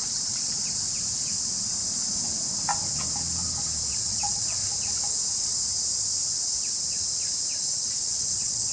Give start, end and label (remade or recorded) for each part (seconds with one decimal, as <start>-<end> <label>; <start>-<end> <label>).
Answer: 0.0-0.9 remade; 0.9-3.9 recorded; 3.9-4.6 remade; 4.6-7.6 recorded; 7.6-8.7 remade